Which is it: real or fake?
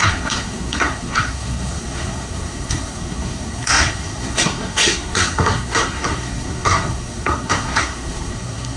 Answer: fake